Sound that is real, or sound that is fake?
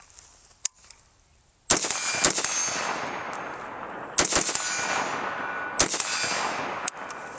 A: real